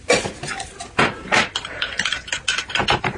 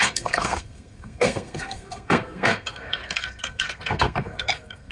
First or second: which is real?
first